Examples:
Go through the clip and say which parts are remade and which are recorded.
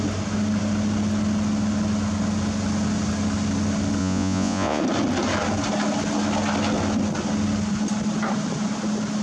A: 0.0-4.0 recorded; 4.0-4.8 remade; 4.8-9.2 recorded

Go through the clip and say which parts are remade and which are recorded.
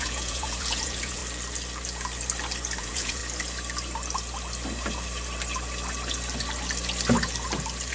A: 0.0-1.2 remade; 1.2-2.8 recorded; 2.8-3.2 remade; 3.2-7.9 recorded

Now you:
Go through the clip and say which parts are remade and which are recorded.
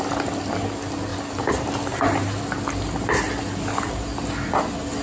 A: 0.0-5.0 recorded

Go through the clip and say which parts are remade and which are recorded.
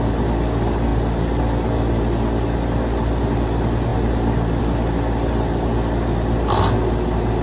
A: 0.0-7.4 recorded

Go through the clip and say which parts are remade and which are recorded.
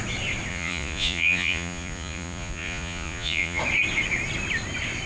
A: 0.0-0.5 recorded; 0.5-3.6 remade; 3.6-5.1 recorded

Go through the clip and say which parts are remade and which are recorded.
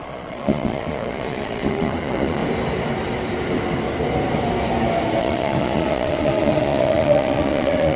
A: 0.0-2.4 remade; 2.4-5.2 recorded; 5.2-8.0 remade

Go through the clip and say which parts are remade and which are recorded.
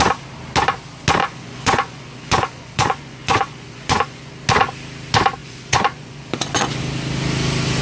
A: 0.0-1.2 recorded; 1.2-4.3 remade; 4.3-5.4 recorded; 5.4-6.8 remade; 6.8-7.8 recorded